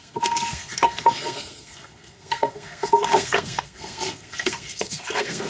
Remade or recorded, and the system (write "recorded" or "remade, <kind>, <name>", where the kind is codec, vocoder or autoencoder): remade, codec, SNAC